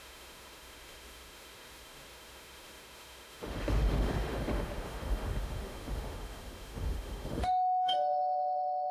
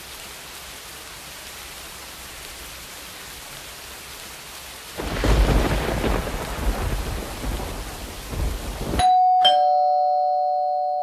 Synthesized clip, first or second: first